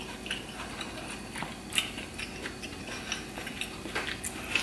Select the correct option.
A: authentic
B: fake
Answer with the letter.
A